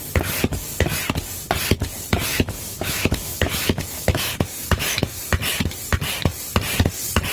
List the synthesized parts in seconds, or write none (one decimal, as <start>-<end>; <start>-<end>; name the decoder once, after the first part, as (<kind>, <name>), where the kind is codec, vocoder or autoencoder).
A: 2.3-5.2 (autoencoder, DAC-VAE)